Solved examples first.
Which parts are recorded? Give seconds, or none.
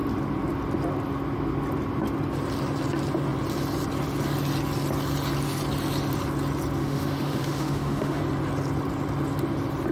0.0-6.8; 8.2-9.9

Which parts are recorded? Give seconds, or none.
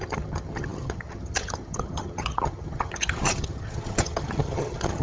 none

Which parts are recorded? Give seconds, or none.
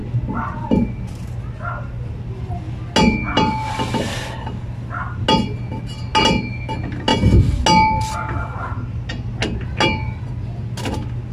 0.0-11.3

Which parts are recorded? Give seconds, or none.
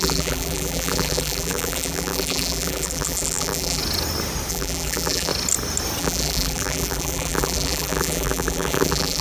3.8-4.5; 5.3-6.0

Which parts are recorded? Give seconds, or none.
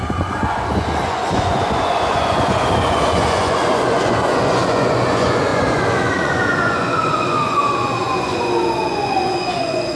none